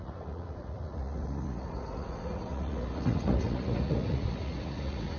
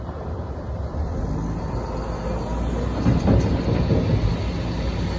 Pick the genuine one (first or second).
second